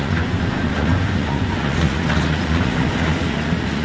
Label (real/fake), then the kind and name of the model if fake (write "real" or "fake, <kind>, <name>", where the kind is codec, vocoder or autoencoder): fake, vocoder, Vocos